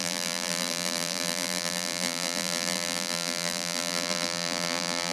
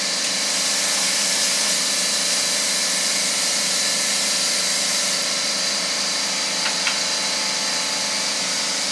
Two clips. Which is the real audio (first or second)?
second